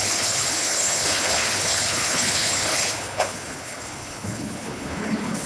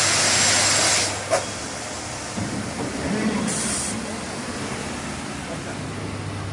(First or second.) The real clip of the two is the second